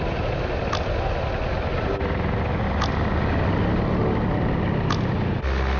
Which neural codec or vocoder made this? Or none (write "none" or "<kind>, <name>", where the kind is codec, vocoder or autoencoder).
none